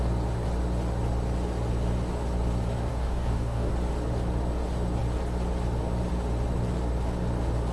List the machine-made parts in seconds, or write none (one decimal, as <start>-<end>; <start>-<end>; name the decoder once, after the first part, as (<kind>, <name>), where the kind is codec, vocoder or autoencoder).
2.9-3.7 (codec, DAC)